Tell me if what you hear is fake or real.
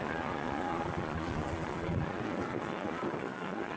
fake